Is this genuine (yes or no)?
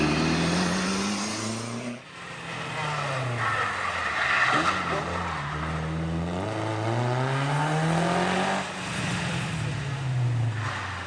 yes